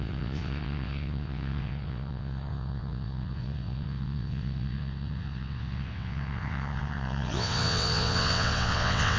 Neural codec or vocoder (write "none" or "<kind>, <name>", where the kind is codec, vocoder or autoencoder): vocoder, WaveNeXt